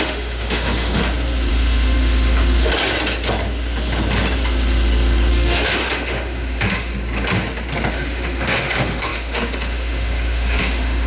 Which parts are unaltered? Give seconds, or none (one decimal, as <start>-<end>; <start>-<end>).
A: 1.0-1.5; 2.7-5.3; 6.9-7.9

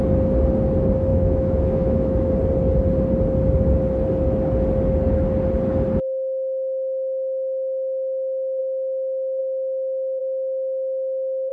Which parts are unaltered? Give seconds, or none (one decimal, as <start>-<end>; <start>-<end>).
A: 0.0-1.1; 2.3-8.6; 9.4-10.2

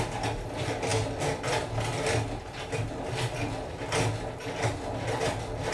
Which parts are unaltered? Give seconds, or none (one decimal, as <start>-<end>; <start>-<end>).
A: 0.0-5.7

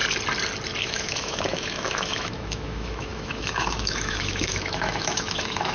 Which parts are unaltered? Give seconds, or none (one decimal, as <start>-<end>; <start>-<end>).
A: 0.0-0.8

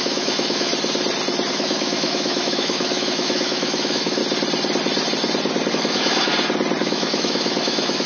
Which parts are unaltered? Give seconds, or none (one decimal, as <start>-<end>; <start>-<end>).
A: 0.7-1.5; 4.2-5.7; 6.3-6.8

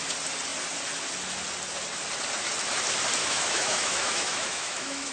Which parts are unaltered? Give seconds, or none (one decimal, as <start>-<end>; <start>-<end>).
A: 0.0-3.2

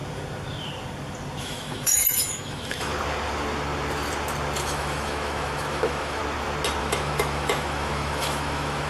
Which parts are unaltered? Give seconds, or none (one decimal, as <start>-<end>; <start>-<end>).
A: 0.0-1.4; 2.9-4.6; 6.2-6.8

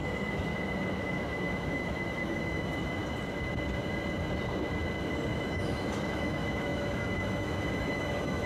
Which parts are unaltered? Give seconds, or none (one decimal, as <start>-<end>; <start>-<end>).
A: 0.5-1.0; 3.0-5.3